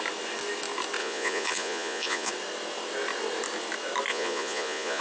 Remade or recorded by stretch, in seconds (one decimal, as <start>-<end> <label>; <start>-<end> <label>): 0.0-1.0 recorded; 1.0-2.3 remade; 2.3-4.1 recorded; 4.1-5.0 remade